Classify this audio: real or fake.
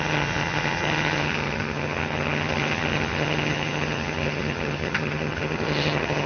fake